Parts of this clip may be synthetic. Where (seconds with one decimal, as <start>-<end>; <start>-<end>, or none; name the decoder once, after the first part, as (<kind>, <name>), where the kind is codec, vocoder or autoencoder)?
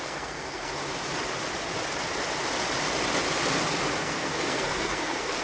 0.0-0.8 (codec, SNAC); 4.0-5.4